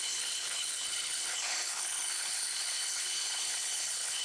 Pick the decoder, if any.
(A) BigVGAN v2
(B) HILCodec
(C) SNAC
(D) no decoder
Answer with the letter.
B